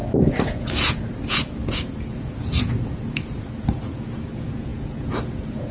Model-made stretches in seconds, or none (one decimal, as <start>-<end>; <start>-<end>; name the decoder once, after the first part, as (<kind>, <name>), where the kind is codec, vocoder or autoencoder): 0.0-5.7 (vocoder, Vocos)